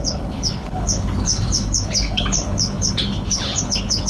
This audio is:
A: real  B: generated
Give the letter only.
B